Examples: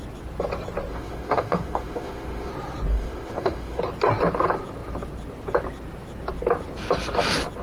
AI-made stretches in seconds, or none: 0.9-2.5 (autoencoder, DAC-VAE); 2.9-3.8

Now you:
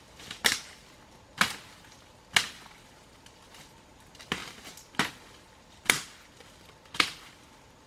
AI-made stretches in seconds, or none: none

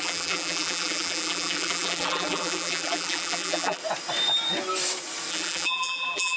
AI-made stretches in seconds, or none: 0.0-3.8 (vocoder, BigVGAN v2); 5.3-6.4

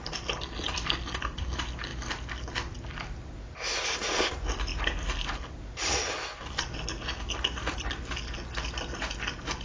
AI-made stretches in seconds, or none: none

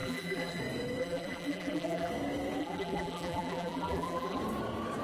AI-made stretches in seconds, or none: 0.0-0.6 (vocoder, BigVGAN v2); 1.0-2.1; 2.6-4.4

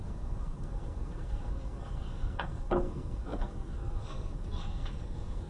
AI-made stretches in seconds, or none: 0.0-5.5 (codec, SNAC)